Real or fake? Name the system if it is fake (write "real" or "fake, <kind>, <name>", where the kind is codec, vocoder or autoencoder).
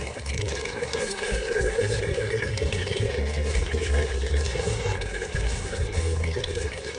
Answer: fake, codec, SNAC